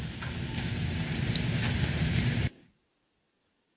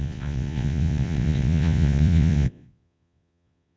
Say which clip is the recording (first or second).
first